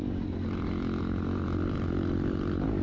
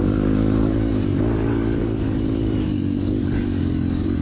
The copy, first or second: second